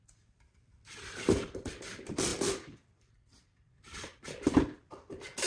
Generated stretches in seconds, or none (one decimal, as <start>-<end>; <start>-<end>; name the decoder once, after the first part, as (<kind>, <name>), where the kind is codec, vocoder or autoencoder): none

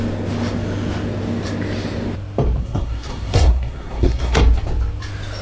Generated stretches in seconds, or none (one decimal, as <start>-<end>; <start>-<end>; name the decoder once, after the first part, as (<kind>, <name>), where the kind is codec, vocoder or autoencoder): 2.6-4.4 (codec, SNAC)

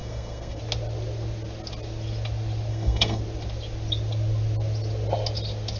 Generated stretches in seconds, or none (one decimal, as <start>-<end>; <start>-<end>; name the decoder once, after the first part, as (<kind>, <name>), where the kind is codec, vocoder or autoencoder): 0.0-0.6 (codec, SNAC); 2.7-3.2

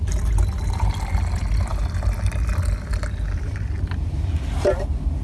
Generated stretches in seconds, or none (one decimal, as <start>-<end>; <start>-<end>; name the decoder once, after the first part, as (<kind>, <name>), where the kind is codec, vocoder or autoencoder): none

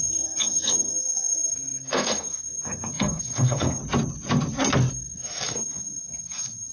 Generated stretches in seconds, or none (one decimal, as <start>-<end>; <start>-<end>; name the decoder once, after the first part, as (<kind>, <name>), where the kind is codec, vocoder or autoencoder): 0.0-3.8 (codec, SNAC); 4.9-6.7

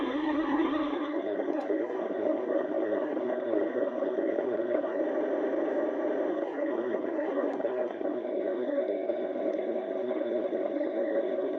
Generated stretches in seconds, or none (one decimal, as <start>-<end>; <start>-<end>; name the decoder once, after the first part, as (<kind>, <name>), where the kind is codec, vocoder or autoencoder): 0.0-5.0 (codec, SNAC); 6.3-11.6

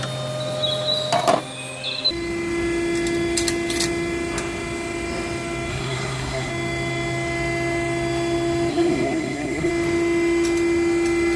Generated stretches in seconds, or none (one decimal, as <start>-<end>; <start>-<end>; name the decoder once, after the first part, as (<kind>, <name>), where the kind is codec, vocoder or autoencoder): 5.7-6.5 (codec, SNAC); 8.7-9.7

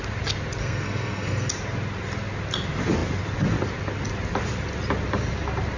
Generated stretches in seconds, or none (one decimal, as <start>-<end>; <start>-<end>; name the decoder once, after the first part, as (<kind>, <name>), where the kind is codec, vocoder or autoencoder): 0.6-1.5 (codec, SNAC)